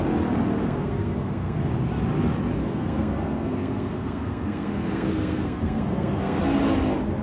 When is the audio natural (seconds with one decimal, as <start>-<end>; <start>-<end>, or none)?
0.0-0.6; 1.7-2.6; 6.4-7.2